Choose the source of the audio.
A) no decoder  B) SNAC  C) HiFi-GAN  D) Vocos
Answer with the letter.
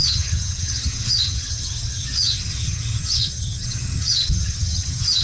C